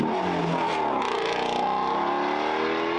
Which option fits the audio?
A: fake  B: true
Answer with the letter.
B